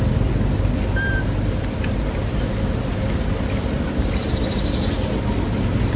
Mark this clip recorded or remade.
recorded